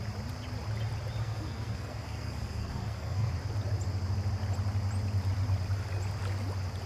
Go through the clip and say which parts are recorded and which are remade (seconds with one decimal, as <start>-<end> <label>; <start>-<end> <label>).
0.0-1.2 recorded; 1.2-3.3 remade; 3.3-6.9 recorded